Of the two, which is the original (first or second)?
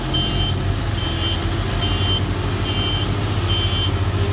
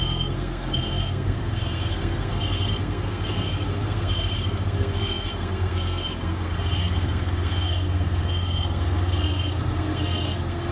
first